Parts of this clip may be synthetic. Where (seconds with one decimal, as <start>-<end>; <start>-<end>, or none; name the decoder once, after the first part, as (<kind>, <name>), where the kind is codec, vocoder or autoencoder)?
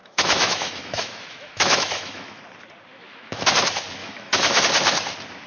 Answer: 0.0-2.4 (autoencoder, DAC-VAE); 2.9-3.5; 4.0-4.6